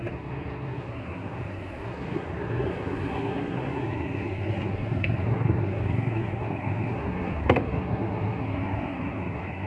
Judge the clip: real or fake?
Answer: fake